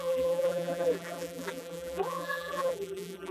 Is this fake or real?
fake